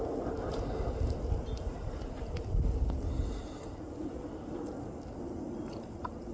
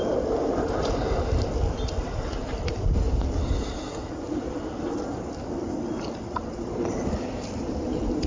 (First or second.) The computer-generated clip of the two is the second